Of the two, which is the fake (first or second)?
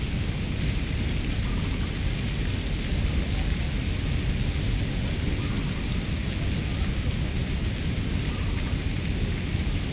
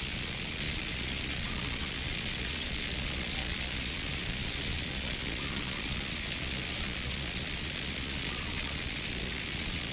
second